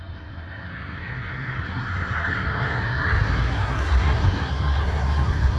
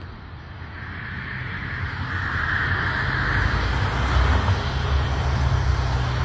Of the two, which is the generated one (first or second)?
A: first